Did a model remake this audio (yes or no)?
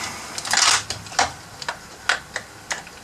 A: no